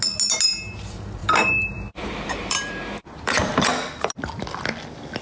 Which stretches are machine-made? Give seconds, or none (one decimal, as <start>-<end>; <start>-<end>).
1.2-4.3